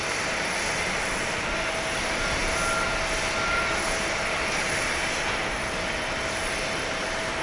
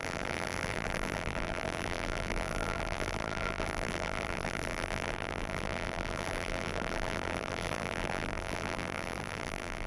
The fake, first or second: second